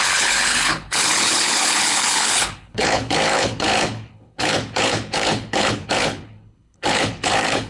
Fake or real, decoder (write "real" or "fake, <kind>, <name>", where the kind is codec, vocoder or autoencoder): fake, codec, HILCodec